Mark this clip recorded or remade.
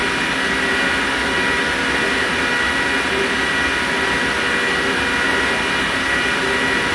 recorded